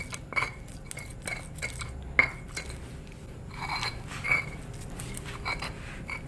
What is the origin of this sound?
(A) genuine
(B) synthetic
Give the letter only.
A